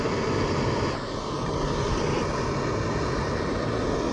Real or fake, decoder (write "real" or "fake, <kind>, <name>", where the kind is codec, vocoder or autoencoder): real